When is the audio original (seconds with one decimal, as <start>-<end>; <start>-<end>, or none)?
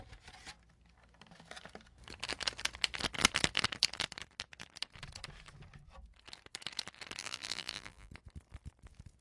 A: 0.0-7.2; 8.1-9.2